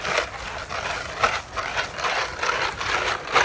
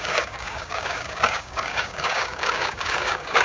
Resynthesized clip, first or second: second